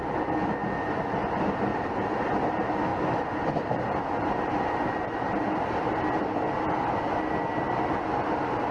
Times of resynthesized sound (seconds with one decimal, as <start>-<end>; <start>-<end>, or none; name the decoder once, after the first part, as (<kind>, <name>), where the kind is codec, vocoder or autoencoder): 1.7-2.2 (vocoder, BigVGAN v2)